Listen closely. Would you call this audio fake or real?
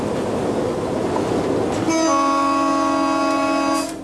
real